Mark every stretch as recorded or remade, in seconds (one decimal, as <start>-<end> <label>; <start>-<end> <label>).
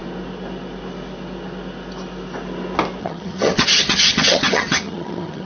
0.0-3.0 recorded; 3.0-5.4 remade